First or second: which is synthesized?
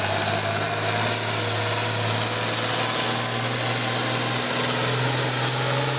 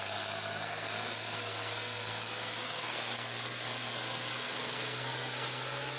second